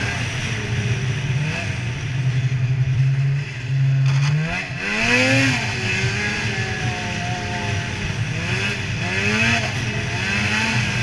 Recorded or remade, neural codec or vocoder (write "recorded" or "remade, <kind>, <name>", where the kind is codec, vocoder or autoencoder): recorded